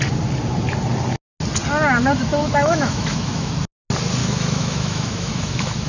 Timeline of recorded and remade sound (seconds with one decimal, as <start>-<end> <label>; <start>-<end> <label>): 0.0-2.4 recorded; 2.4-3.5 remade; 3.5-4.2 recorded; 4.2-5.9 remade